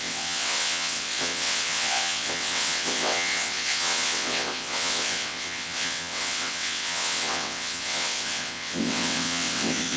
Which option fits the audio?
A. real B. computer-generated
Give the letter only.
B